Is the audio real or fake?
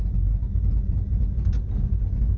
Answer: real